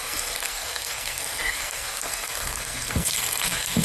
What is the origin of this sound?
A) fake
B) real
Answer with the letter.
A